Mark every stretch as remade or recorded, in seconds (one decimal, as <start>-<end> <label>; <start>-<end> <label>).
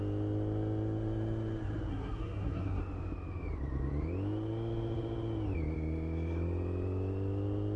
0.0-1.9 recorded; 1.9-2.8 remade; 2.8-7.8 recorded